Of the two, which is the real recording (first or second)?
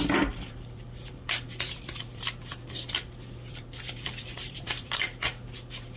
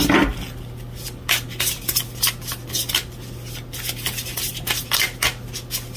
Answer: second